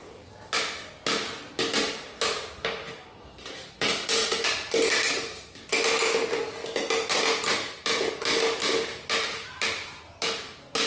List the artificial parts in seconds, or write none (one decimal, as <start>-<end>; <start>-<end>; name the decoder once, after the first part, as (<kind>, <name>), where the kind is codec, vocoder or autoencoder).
none